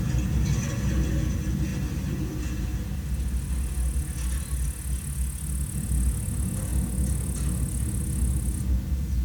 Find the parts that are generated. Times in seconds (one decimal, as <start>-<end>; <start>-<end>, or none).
none